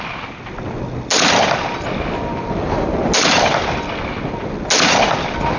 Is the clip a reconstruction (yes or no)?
no